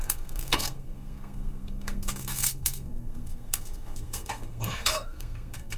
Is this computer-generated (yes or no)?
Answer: yes